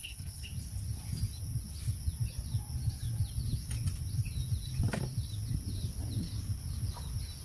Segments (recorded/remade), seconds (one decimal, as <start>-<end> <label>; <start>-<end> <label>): 0.0-0.5 remade; 0.5-7.4 recorded